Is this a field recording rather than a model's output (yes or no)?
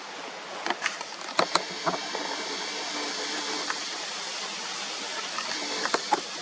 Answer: yes